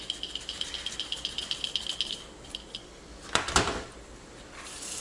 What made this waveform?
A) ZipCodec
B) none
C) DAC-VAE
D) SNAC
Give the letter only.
B